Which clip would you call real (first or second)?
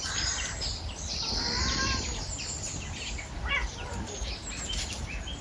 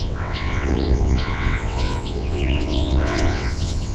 first